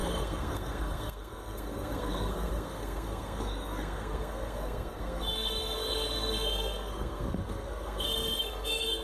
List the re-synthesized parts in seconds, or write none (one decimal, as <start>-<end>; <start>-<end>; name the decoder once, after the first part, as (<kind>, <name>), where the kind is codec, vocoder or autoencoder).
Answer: 0.0-9.0 (codec, SNAC)